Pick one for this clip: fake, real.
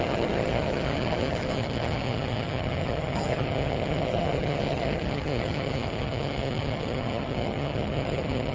fake